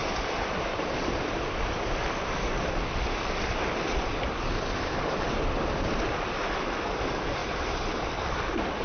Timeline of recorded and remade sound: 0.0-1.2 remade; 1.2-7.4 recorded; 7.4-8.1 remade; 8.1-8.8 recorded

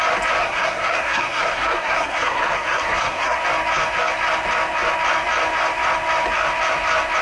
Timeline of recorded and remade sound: 0.0-0.4 recorded; 0.4-3.4 remade; 3.4-7.2 recorded

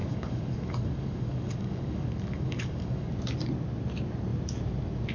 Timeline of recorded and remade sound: 0.0-3.1 remade; 3.1-5.1 recorded